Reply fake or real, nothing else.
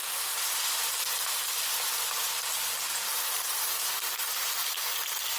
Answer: fake